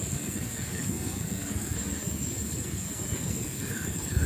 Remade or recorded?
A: remade